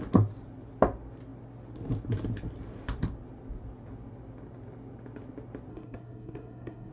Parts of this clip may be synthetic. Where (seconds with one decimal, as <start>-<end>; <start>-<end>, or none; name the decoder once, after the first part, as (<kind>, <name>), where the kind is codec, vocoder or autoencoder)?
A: 5.7-6.9 (codec, SNAC)